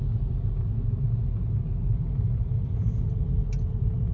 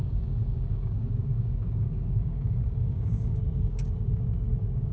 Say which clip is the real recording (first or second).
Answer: first